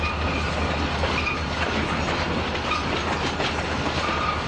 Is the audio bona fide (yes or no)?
yes